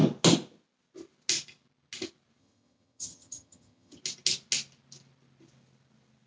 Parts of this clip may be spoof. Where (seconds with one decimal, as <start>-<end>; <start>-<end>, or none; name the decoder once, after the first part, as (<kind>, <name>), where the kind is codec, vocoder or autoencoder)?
2.4-4.0 (vocoder, HiFi-GAN)